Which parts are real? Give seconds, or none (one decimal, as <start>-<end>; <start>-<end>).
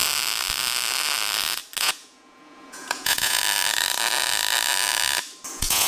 0.0-1.8; 3.4-5.5